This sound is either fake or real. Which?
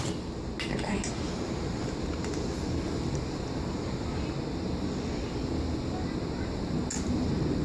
real